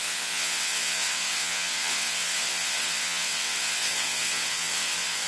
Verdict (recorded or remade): remade